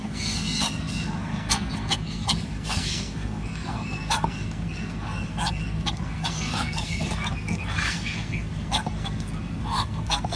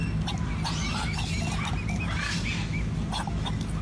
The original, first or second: second